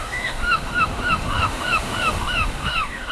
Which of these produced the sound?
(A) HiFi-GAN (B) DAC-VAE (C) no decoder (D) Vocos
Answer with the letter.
B